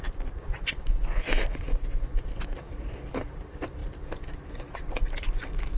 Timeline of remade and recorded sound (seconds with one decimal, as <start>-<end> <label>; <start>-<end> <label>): 0.0-5.8 recorded